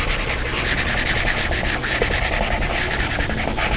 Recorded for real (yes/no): yes